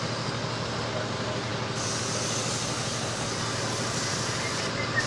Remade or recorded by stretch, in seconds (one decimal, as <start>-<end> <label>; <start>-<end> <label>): 0.0-5.1 recorded